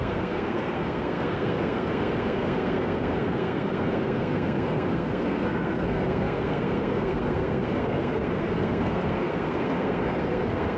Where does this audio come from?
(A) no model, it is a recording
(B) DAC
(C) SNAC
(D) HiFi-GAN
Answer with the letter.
C